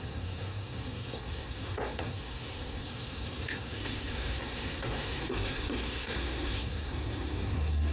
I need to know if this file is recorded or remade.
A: remade